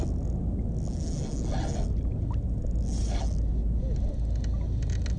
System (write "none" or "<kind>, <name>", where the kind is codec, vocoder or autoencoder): none